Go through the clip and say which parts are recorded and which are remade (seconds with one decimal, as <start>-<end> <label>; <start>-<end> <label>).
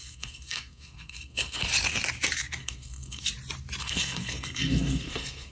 0.0-1.6 remade; 1.6-2.6 recorded; 2.6-3.2 remade; 3.2-3.8 recorded; 3.8-5.5 remade